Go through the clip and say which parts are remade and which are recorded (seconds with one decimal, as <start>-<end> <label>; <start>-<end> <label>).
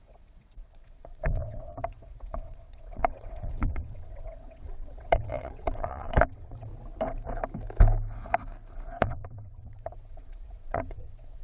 0.0-6.7 remade; 6.7-9.0 recorded; 9.0-11.4 remade